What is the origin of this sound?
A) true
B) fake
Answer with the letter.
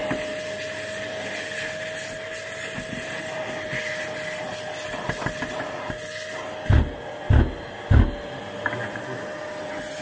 A